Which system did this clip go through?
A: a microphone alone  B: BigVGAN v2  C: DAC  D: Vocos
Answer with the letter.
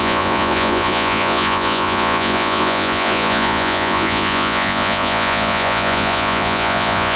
D